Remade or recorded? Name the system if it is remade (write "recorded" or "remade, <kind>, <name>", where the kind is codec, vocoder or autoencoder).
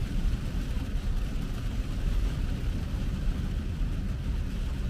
remade, vocoder, BigVGAN v2